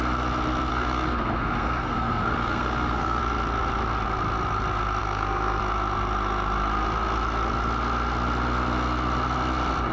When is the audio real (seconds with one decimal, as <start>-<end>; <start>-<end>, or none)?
0.0-0.7; 3.2-5.0; 5.6-9.9